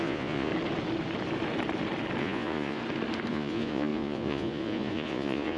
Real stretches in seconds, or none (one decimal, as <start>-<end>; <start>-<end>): 0.5-2.2; 2.8-3.3